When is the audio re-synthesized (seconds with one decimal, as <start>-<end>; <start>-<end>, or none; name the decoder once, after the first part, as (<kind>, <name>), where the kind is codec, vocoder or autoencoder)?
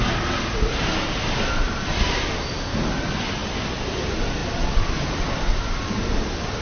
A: none